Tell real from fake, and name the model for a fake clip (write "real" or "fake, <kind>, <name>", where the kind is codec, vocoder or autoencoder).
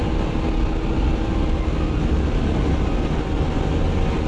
real